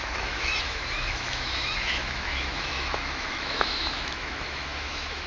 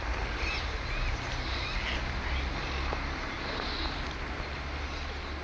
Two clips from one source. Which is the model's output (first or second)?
first